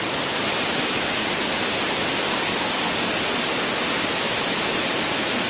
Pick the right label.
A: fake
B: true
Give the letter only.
B